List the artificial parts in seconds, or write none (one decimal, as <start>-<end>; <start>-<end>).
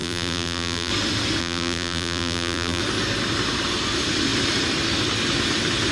0.0-0.9; 1.4-2.8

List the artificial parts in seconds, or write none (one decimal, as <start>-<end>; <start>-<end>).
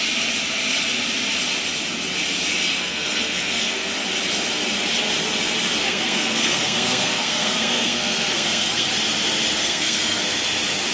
2.8-3.9; 5.8-8.9; 9.6-10.2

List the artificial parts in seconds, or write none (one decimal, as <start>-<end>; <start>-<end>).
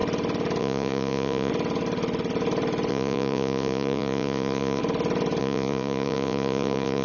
0.6-1.5; 2.9-4.8; 5.4-7.0